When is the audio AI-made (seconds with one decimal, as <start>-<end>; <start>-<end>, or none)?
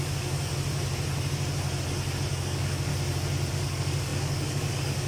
0.0-0.5; 2.3-2.9; 3.5-5.1